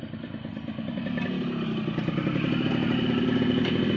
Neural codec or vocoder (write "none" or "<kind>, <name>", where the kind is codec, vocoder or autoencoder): none